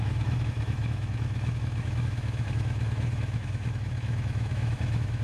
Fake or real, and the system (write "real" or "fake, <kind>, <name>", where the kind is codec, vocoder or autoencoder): fake, autoencoder, DAC-VAE